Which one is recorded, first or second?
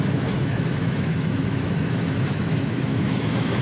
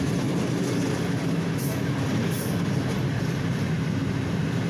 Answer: second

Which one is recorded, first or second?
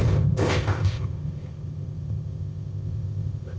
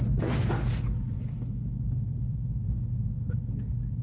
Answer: second